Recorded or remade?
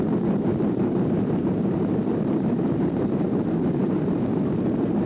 remade